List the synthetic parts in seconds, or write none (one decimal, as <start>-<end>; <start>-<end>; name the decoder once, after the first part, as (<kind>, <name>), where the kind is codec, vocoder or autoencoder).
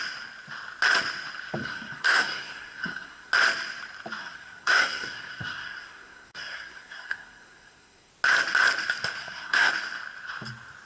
1.6-3.3 (codec, SNAC); 4.2-8.1; 9.2-9.7